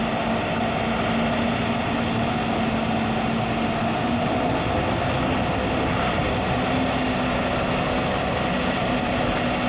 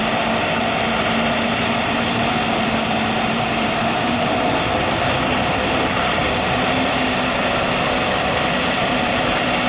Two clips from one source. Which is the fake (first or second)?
second